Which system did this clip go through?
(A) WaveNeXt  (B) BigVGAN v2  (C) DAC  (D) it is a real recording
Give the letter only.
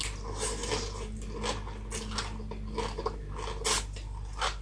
D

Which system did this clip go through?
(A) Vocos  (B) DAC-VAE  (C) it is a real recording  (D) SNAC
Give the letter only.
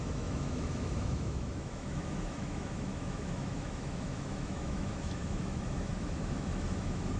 B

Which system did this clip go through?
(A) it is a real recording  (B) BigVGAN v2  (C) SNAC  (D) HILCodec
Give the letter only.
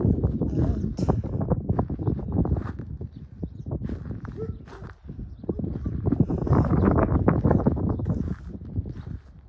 A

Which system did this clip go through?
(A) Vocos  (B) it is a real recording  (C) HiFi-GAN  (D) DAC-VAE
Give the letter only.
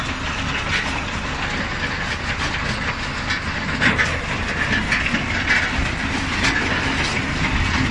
B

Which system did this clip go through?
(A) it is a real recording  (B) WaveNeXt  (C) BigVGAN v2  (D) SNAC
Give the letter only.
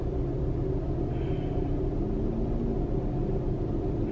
A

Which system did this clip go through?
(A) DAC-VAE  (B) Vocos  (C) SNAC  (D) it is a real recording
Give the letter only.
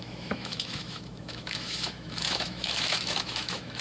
A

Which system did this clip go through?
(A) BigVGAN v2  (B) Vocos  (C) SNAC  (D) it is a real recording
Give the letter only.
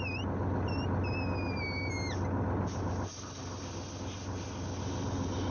D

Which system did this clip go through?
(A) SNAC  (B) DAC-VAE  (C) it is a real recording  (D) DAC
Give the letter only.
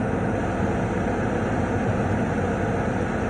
C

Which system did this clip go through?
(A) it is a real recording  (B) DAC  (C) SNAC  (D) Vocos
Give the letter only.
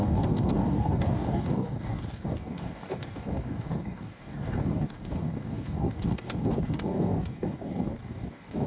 B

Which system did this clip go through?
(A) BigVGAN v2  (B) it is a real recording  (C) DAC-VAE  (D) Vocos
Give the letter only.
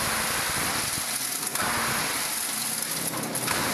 B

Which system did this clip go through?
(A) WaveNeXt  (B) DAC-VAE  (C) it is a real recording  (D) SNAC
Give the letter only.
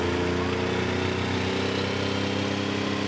C